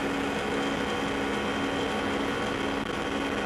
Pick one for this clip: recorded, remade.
recorded